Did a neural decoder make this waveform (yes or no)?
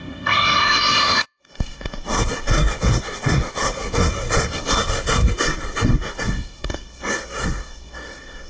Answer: yes